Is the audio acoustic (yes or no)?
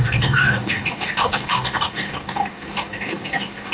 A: no